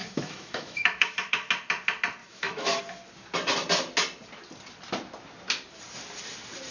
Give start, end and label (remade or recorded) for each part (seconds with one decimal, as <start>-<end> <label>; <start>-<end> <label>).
0.0-1.5 remade; 1.5-2.2 recorded; 2.2-2.8 remade; 2.8-6.7 recorded